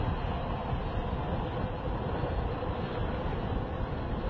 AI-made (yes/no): no